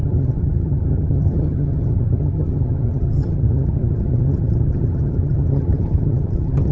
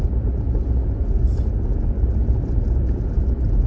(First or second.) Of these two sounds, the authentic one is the second